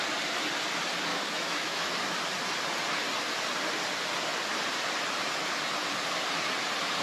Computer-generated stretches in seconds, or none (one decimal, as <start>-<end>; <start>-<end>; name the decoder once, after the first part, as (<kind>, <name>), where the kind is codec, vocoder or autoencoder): 1.1-1.9 (autoencoder, DAC-VAE)